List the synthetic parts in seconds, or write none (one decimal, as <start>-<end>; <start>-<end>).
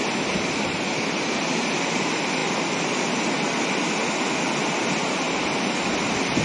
none